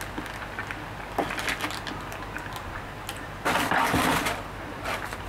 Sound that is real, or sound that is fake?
real